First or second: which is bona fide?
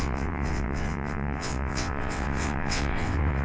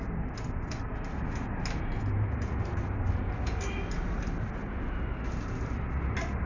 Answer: second